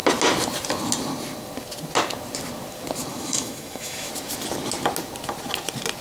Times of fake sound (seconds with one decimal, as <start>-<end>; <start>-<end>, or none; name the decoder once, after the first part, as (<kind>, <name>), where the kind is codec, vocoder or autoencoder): 3.1-4.1 (autoencoder, DAC-VAE)